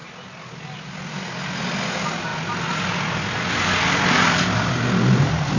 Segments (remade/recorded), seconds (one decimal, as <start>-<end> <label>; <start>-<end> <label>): 0.0-5.6 recorded